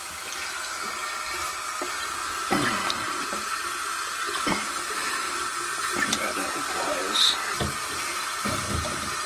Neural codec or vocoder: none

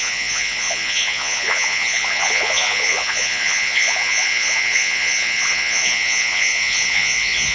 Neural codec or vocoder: vocoder, Vocos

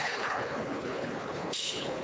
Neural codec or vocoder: codec, HILCodec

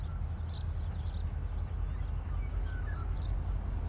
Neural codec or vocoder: none